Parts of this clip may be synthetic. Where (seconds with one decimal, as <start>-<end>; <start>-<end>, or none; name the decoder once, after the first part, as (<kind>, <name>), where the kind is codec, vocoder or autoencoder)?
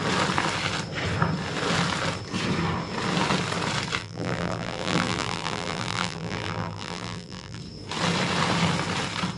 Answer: 4.0-7.6 (vocoder, BigVGAN v2)